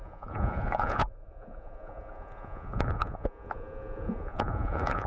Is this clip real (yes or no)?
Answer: no